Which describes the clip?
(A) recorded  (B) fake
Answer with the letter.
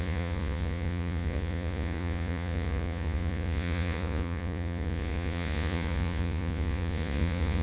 B